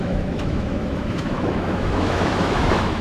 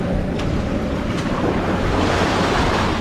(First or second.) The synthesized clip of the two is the first